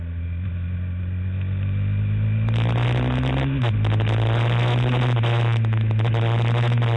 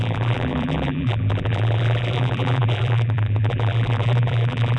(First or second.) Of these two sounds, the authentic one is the first